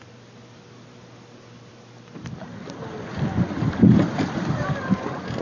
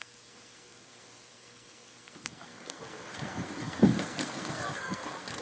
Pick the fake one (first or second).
second